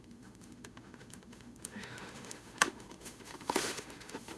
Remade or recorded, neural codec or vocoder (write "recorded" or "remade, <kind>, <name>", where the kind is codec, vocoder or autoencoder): remade, autoencoder, DAC-VAE